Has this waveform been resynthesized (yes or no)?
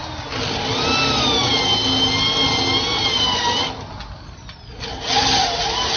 no